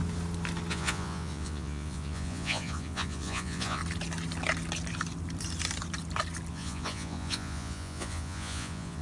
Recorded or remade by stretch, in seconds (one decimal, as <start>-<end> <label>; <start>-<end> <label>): 0.0-0.7 recorded; 0.7-3.8 remade; 3.8-6.5 recorded; 6.5-9.0 remade